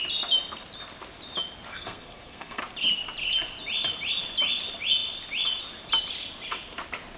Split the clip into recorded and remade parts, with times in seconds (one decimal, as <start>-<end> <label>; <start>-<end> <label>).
0.0-1.7 recorded; 1.7-2.6 remade; 2.6-7.2 recorded